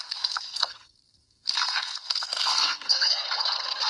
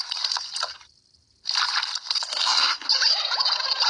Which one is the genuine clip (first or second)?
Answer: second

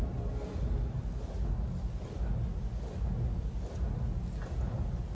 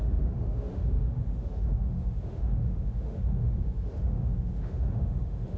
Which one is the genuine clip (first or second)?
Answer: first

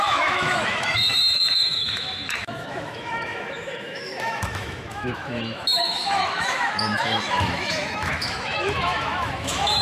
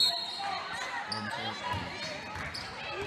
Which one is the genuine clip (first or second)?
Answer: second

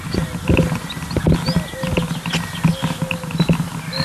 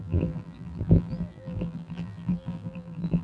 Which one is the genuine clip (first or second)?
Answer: first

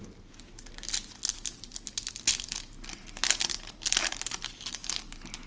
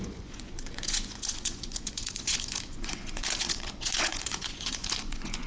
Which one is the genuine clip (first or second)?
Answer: first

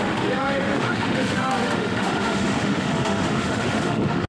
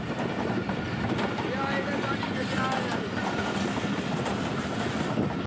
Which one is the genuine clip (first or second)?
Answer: second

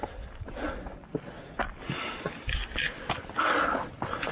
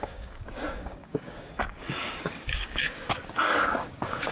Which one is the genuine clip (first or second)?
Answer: first